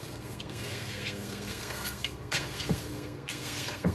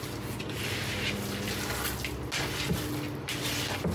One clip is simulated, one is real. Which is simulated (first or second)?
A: first